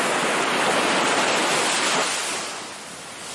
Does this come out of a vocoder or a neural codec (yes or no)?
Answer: no